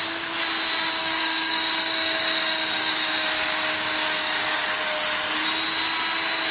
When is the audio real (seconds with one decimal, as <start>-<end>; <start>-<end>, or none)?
0.0-1.0; 4.7-6.5